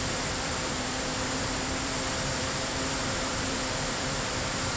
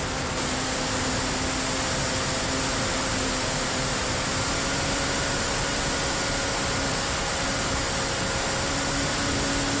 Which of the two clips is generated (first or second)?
first